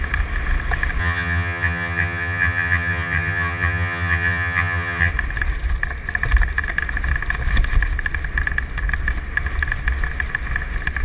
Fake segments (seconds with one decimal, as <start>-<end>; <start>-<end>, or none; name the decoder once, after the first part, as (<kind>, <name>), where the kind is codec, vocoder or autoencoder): 1.0-5.1 (vocoder, HiFi-GAN)